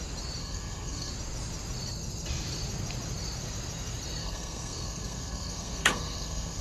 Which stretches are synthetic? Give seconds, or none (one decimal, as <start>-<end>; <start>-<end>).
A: 0.4-1.1; 4.2-6.6

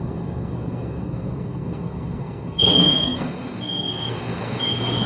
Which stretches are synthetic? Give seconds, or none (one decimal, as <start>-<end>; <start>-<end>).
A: 0.0-5.1

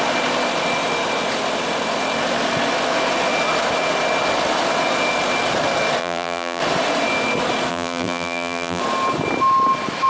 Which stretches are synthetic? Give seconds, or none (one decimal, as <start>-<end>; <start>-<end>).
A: 6.0-6.6; 7.7-8.8

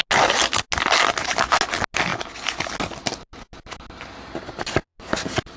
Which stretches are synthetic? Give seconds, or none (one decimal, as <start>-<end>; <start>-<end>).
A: none

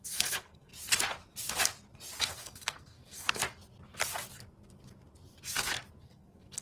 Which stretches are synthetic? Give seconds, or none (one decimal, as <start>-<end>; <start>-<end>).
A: 0.0-0.7; 2.3-3.4; 6.0-6.6

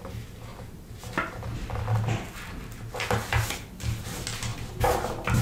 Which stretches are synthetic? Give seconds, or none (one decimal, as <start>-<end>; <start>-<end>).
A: none